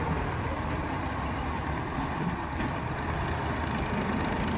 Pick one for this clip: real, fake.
real